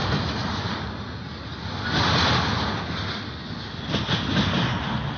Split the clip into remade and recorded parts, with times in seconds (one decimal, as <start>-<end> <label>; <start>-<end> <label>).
0.0-5.2 recorded